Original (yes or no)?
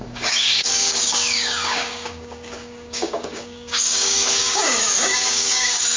no